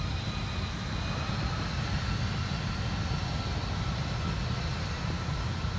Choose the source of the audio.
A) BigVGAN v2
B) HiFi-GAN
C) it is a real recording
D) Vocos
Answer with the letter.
C